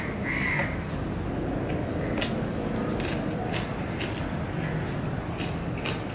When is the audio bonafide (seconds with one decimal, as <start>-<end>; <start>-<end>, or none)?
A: 0.0-6.1